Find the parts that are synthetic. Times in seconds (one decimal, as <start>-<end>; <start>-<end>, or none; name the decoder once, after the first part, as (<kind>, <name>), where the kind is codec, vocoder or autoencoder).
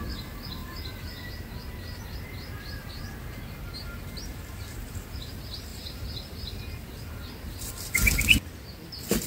0.6-3.0 (vocoder, BigVGAN v2); 5.7-7.7